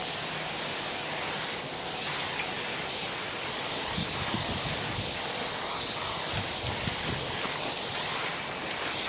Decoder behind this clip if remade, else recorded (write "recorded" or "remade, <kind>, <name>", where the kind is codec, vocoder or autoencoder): recorded